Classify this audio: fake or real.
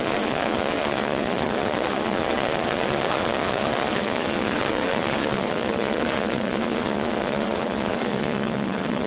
fake